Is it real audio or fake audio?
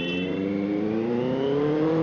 fake